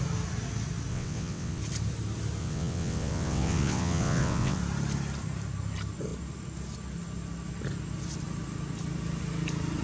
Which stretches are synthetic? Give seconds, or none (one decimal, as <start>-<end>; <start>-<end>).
0.9-1.6; 2.4-4.6